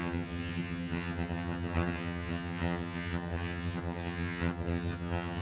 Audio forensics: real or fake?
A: fake